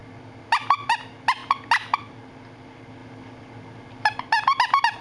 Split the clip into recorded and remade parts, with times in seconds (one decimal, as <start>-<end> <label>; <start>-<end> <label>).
0.0-5.0 recorded